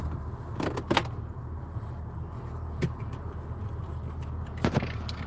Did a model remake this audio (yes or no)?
no